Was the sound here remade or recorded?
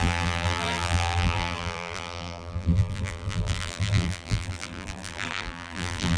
remade